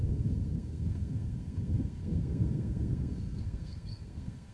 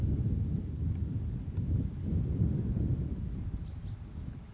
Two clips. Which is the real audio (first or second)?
second